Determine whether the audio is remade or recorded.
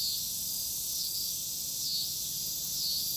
recorded